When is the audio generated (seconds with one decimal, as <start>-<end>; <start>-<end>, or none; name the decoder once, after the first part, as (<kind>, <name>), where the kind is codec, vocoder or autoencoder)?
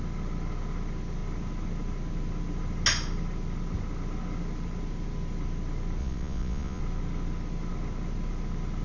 6.0-6.8 (vocoder, Vocos)